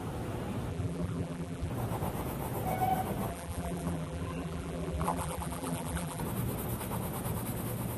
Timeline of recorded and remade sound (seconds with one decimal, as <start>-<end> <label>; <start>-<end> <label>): 0.0-0.7 recorded; 0.7-1.7 remade; 1.7-3.3 recorded; 3.3-6.2 remade; 6.2-8.0 recorded